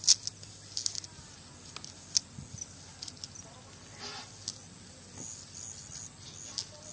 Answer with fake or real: real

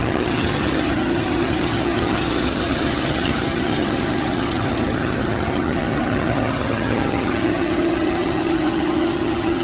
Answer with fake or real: fake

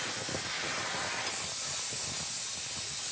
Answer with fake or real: real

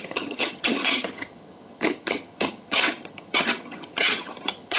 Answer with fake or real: fake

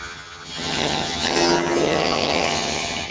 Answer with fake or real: fake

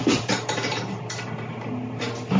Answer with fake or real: real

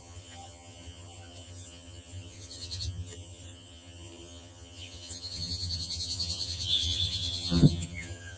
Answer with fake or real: fake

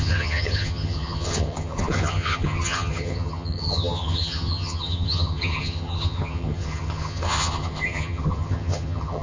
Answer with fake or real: fake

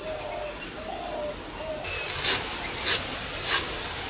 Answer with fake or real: real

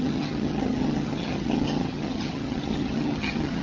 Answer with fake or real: fake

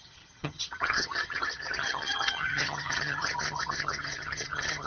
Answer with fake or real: fake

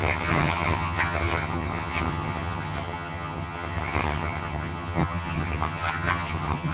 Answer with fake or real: fake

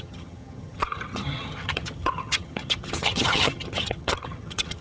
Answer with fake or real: fake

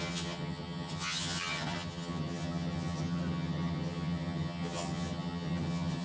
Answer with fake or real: fake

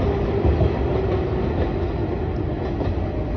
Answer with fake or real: real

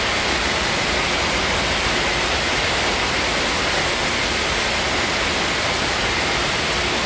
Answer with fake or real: real